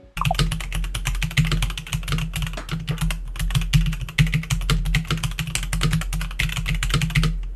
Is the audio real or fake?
real